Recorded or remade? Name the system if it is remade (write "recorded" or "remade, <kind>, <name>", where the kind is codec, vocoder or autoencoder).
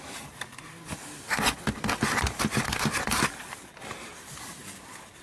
recorded